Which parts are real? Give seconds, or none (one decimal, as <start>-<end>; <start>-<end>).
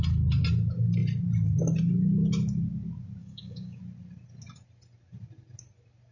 0.0-3.2; 3.8-6.1